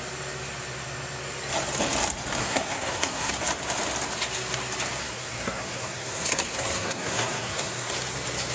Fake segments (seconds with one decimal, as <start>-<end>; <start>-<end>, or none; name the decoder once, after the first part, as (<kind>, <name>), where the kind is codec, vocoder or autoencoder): 2.4-3.3 (codec, SNAC); 5.0-7.9